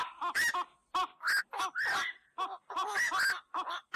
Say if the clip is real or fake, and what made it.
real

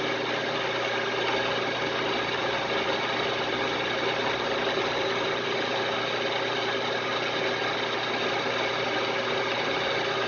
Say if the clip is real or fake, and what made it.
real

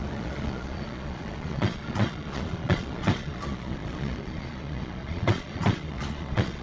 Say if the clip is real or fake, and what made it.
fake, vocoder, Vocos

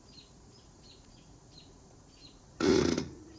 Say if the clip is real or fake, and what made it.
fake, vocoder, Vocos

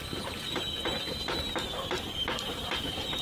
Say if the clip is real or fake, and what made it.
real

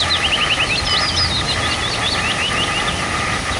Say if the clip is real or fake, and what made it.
real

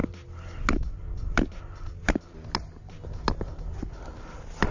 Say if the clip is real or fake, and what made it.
real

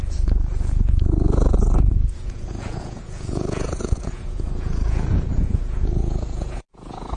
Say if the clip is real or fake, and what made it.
fake, vocoder, Vocos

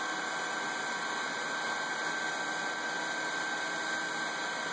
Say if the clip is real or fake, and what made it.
real